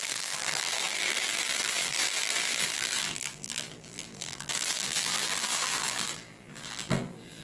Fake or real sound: fake